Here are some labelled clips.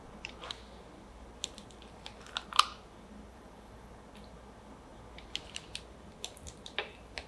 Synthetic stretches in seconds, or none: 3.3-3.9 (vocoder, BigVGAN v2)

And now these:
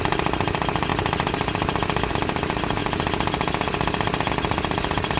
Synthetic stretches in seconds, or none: none

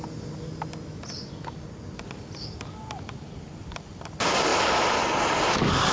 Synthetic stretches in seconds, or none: 0.0-4.5 (vocoder, BigVGAN v2); 5.5-5.9

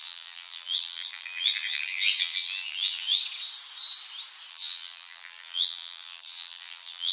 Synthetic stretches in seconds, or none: 0.0-3.2 (vocoder, BigVGAN v2); 4.5-7.1

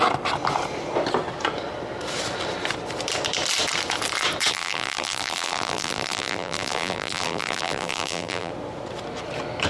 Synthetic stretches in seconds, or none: 4.5-8.5 (vocoder, BigVGAN v2)